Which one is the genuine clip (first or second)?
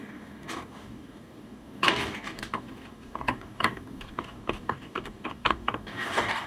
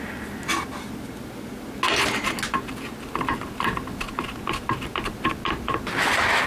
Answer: second